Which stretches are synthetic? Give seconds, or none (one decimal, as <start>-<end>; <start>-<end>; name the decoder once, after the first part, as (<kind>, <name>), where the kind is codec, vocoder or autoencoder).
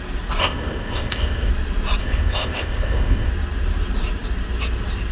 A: 0.4-1.5 (codec, ZipCodec); 2.0-3.3